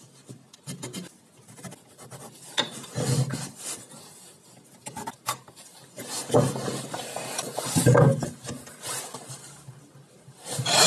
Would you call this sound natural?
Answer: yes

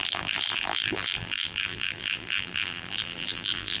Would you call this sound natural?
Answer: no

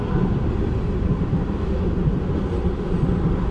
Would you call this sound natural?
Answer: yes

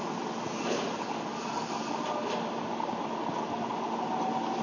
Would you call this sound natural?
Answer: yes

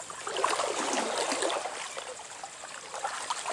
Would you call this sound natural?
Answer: yes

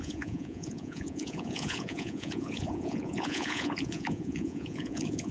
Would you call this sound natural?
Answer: no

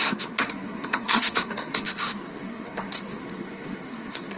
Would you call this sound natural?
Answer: no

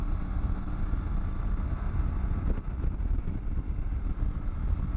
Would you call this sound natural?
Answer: yes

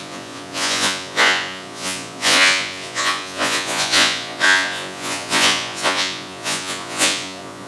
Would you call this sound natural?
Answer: no